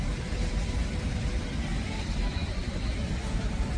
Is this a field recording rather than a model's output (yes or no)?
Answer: no